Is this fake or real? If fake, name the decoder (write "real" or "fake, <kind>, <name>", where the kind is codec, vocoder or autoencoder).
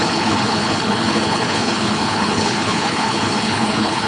fake, codec, HILCodec